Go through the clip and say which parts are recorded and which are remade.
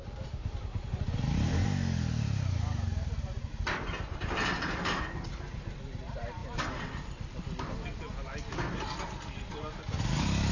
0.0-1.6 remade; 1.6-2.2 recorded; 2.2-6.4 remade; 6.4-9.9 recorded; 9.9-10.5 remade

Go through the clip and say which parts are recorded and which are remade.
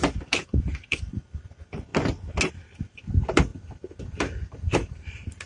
0.0-1.9 remade; 1.9-2.5 recorded; 2.5-3.5 remade; 3.5-4.1 recorded; 4.1-5.5 remade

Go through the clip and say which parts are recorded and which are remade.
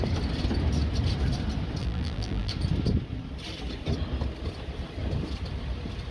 0.0-1.8 recorded; 1.8-2.5 remade; 2.5-6.1 recorded